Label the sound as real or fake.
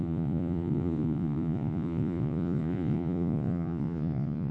fake